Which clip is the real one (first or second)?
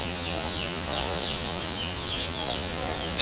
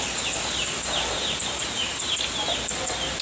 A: second